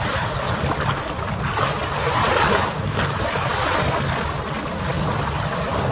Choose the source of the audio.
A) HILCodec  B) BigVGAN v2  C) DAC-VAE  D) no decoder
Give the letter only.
D